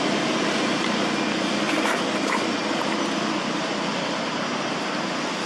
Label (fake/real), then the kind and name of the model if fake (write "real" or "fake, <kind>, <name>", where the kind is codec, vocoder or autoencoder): real